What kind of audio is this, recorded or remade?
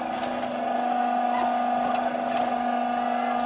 recorded